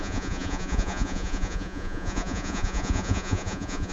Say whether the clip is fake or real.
fake